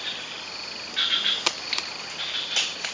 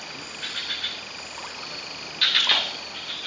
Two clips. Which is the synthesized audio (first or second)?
second